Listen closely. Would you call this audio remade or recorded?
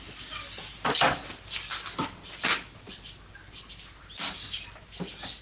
recorded